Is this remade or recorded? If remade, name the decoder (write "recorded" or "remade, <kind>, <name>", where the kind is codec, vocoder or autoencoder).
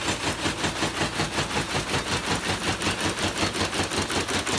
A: recorded